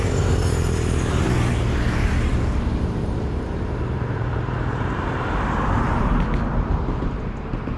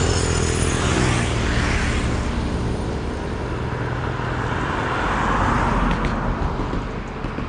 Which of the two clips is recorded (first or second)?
second